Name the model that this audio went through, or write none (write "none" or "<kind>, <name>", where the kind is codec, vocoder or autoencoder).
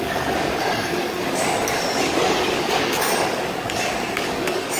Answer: codec, DAC